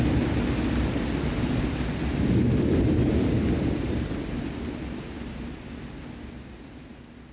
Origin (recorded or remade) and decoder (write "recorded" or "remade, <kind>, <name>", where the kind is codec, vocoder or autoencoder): recorded